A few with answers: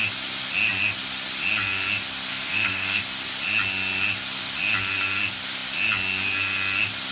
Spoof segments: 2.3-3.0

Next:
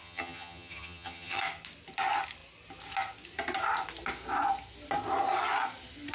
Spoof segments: 0.0-1.4

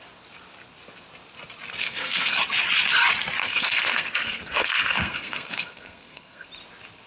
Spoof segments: 1.8-2.4; 3.4-6.5

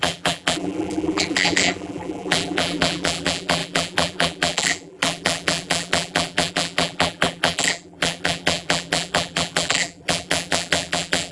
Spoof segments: 0.0-11.3

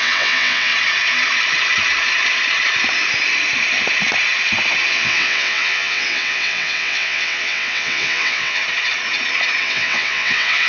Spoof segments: 0.0-0.7; 4.9-8.6; 9.6-10.7

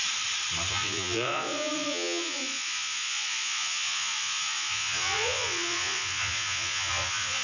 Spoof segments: 0.7-7.4

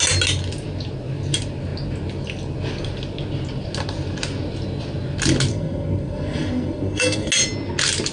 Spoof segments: 5.5-7.3